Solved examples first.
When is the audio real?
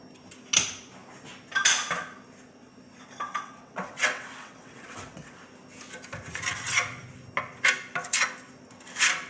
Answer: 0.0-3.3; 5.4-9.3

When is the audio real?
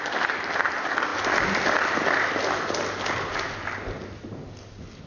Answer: 0.0-5.1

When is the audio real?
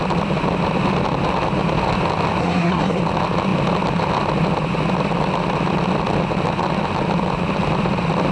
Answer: 0.0-2.4; 3.0-8.3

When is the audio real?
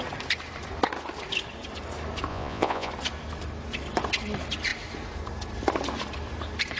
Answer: 0.0-2.3; 2.9-6.8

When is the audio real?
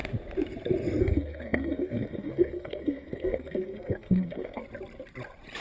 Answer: 0.0-1.0; 4.6-5.6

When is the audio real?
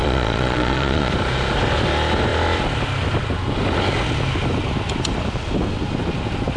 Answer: 1.1-6.6